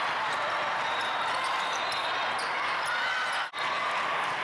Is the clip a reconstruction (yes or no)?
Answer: no